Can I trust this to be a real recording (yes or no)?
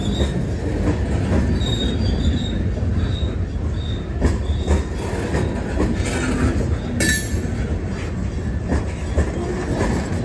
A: yes